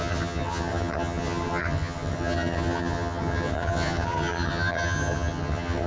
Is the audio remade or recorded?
remade